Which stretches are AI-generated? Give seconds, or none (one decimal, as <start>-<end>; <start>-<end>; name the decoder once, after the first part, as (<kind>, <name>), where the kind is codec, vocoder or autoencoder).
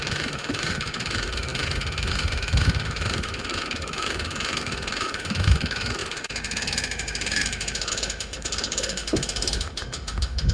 0.0-10.5 (autoencoder, DAC-VAE)